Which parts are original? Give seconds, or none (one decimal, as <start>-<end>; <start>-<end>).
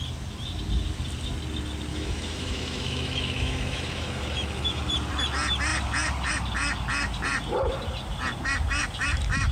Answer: 0.0-1.9; 4.8-9.5